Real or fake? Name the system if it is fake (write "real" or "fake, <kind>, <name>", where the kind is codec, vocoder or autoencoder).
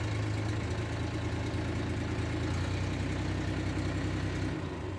real